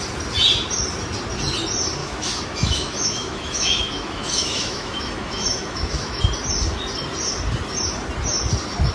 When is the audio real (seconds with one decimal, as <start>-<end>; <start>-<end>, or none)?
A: 0.0-2.0; 6.2-8.9